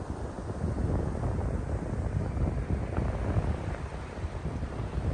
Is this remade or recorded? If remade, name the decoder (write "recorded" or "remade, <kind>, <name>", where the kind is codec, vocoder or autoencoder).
recorded